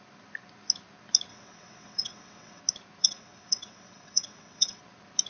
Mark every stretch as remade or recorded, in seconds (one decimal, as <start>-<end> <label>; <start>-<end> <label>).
0.0-1.3 recorded; 1.3-2.6 remade; 2.6-3.0 recorded; 3.0-4.8 remade; 4.8-5.3 recorded